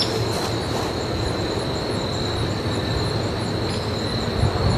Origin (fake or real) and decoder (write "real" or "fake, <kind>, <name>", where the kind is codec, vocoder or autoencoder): real